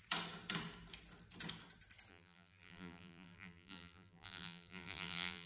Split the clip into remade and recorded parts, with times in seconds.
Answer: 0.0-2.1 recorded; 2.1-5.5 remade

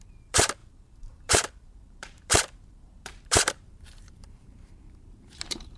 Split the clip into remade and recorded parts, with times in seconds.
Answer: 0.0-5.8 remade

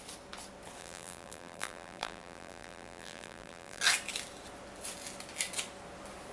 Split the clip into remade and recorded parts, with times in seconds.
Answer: 0.0-0.8 recorded; 0.8-3.8 remade; 3.8-6.3 recorded